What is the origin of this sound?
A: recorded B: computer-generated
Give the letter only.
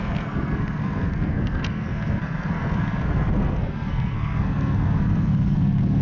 B